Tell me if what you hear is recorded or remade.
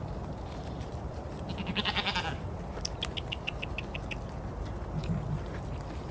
recorded